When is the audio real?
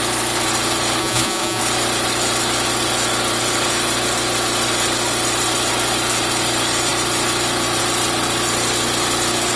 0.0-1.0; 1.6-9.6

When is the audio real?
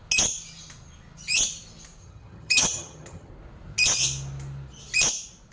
0.0-2.0; 3.3-5.5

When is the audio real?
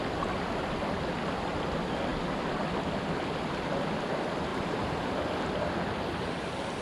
0.0-4.5; 5.1-6.8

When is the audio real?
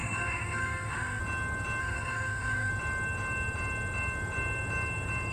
1.2-1.8; 2.7-5.3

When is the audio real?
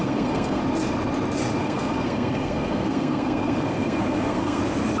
0.6-1.6; 4.6-5.0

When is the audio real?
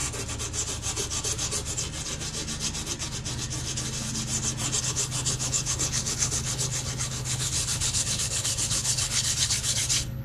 0.0-4.8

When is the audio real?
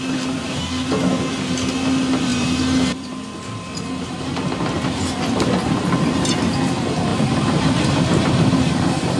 0.0-2.3; 3.1-7.1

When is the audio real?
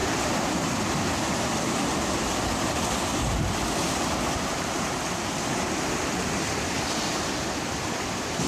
0.0-8.5